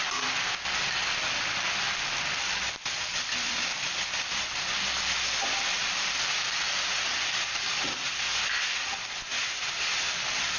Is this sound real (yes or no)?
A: yes